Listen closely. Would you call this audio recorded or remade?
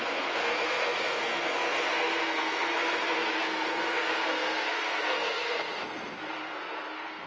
remade